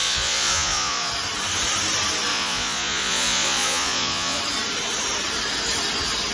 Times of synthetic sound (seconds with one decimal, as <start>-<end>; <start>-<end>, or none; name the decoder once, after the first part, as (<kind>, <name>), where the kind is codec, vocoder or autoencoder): 0.0-1.1 (vocoder, Vocos); 2.3-4.4